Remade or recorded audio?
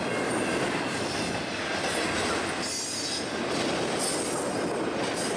recorded